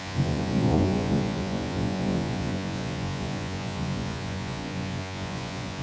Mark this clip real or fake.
fake